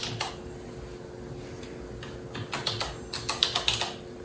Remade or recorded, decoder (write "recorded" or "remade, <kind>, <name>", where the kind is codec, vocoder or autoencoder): recorded